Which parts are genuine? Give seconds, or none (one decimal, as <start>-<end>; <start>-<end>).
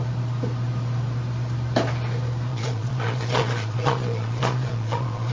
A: 0.0-2.5